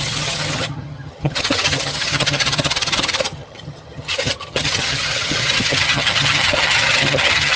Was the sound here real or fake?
fake